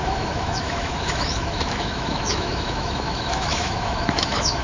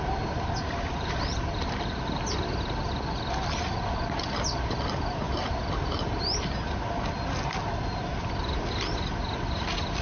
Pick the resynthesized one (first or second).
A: first